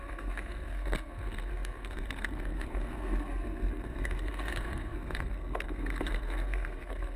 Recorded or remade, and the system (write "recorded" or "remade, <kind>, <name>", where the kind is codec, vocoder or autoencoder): remade, codec, SNAC